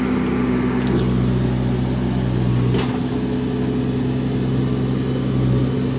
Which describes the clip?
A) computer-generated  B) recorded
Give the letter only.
B